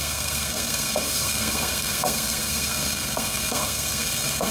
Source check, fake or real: fake